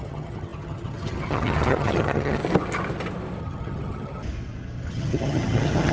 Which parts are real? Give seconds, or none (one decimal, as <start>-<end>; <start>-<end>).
2.4-3.4; 4.2-4.9